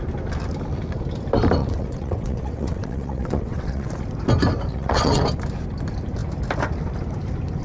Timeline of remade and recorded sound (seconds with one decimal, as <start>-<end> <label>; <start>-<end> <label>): 0.0-1.6 recorded; 1.6-3.9 remade; 3.9-4.7 recorded; 4.7-5.2 remade; 5.2-7.6 recorded